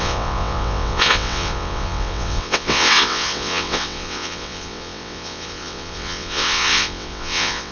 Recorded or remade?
remade